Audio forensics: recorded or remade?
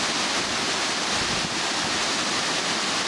recorded